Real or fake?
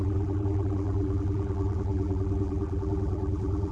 fake